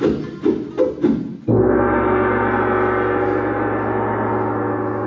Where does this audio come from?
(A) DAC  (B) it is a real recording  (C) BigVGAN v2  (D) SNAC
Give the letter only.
B